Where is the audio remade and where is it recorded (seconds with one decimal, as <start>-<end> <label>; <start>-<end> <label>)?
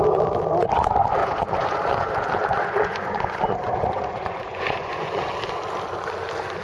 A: 0.0-1.2 recorded; 1.2-5.2 remade; 5.2-6.6 recorded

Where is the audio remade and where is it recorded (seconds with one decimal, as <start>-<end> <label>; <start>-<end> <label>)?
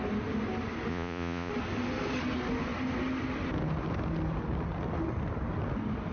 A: 0.0-0.9 recorded; 0.9-1.5 remade; 1.5-6.1 recorded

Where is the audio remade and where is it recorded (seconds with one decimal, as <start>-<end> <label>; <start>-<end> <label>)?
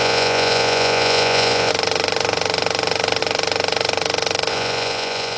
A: 0.0-1.7 remade; 1.7-4.5 recorded; 4.5-5.4 remade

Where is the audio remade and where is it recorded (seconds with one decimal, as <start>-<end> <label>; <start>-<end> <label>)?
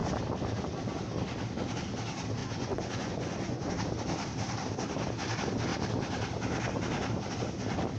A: 0.0-2.4 recorded; 2.4-3.7 remade; 3.7-8.0 recorded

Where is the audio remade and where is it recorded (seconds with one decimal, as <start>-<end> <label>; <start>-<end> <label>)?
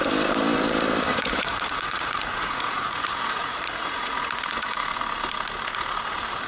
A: 0.0-1.1 recorded; 1.1-5.0 remade; 5.0-6.5 recorded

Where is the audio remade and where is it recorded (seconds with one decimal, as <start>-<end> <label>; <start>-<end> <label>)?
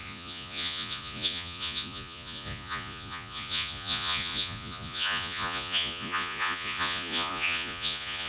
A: 0.0-8.3 remade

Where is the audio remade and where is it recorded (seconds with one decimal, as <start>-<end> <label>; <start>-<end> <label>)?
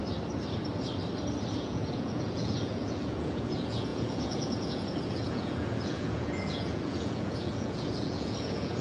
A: 0.0-1.5 recorded; 1.5-8.8 remade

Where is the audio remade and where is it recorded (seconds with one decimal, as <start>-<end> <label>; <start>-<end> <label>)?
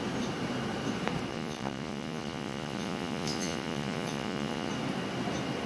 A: 0.0-1.3 recorded; 1.3-4.7 remade; 4.7-5.7 recorded